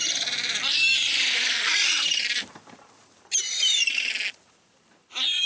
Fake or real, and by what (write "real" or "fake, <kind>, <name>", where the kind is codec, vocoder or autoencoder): fake, vocoder, BigVGAN v2